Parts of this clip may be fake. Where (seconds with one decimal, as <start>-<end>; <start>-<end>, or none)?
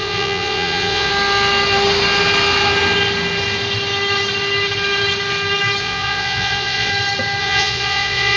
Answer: 0.0-1.1; 5.8-6.9; 7.4-8.4